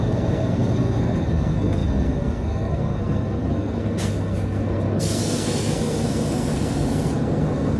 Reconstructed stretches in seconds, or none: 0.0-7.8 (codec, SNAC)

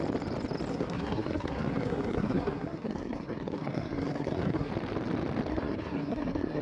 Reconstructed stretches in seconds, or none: 0.7-4.7 (codec, SNAC); 5.5-6.6

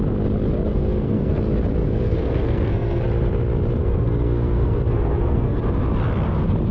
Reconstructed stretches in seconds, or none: 0.7-1.4 (codec, SNAC); 1.8-3.0; 3.8-5.6

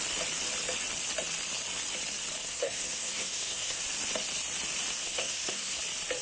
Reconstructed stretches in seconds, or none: 2.4-3.8 (codec, SNAC); 5.0-5.8

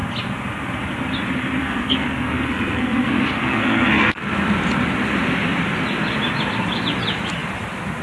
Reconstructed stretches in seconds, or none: 1.6-4.2 (codec, SNAC)